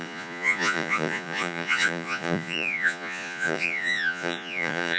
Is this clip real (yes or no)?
no